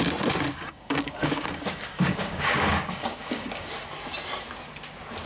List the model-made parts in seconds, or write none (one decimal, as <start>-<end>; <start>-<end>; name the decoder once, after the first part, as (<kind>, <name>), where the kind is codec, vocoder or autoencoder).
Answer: 0.5-3.7 (codec, DAC)